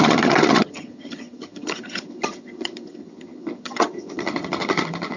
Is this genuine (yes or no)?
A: no